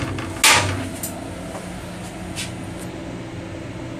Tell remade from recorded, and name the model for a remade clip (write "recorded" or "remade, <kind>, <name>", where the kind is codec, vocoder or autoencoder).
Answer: recorded